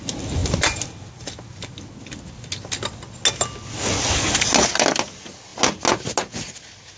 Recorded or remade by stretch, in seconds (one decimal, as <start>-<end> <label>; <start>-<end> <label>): 0.0-7.0 recorded